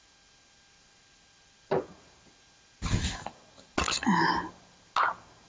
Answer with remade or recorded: recorded